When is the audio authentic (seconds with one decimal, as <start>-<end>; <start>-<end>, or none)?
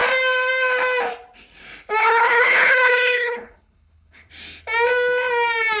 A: 0.0-2.0; 4.3-5.8